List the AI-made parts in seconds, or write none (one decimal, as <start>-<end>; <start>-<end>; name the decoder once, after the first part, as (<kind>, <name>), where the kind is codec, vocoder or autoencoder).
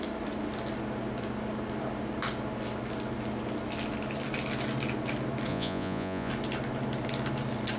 5.5-6.3 (vocoder, Vocos)